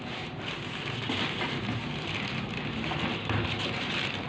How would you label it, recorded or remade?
recorded